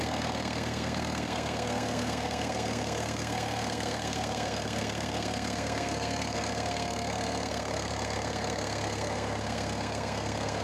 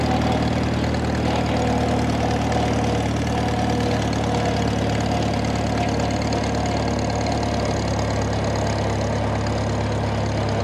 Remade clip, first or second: first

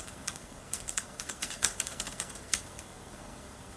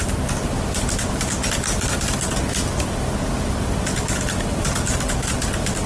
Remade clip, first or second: first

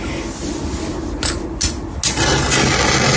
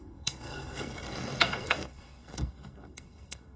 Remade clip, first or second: second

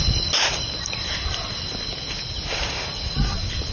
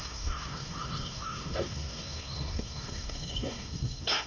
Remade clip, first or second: second